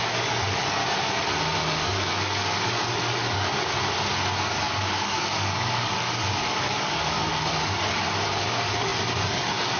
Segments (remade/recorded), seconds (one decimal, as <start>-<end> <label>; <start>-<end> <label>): 0.0-0.8 remade; 0.8-1.6 recorded; 1.6-3.7 remade; 3.7-4.5 recorded; 4.5-9.8 remade